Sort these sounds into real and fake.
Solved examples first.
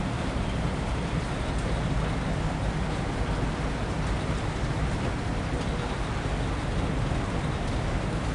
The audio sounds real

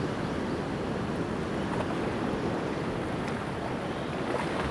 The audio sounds real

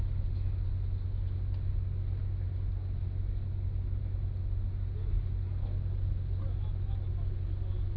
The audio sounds real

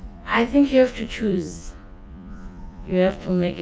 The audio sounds fake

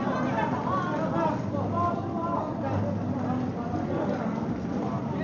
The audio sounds real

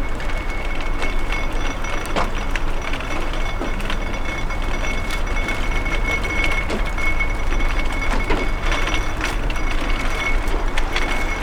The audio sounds real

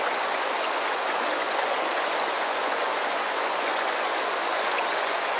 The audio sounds fake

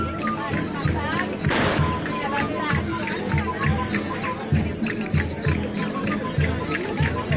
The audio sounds real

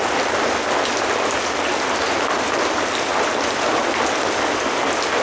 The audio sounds real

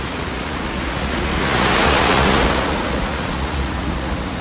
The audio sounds fake